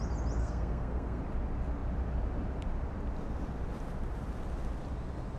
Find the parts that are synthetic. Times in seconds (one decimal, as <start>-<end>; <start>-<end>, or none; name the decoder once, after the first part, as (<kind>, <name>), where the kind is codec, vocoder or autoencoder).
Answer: 0.4-1.2 (codec, SNAC)